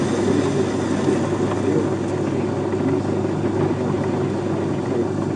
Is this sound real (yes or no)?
yes